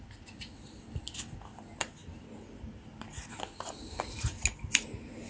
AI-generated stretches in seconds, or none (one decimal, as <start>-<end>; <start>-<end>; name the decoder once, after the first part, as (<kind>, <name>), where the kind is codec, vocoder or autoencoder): none